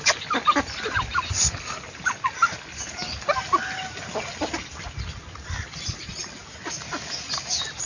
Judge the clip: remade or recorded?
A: recorded